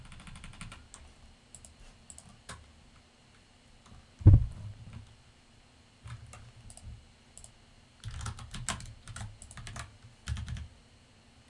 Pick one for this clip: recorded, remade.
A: recorded